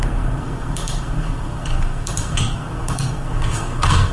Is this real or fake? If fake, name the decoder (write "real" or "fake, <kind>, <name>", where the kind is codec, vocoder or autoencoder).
fake, codec, SNAC